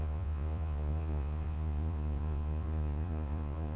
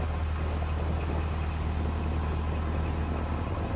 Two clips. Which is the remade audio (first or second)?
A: first